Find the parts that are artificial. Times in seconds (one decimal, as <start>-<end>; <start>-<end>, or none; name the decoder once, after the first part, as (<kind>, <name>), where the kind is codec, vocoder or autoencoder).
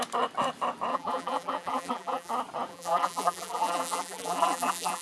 0.9-2.3 (vocoder, BigVGAN v2); 2.7-5.0